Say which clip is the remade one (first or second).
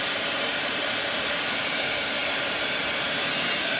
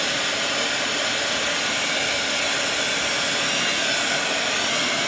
first